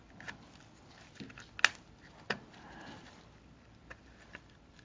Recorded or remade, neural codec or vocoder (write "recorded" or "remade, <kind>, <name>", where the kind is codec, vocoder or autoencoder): recorded